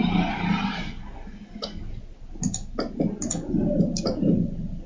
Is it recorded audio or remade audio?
recorded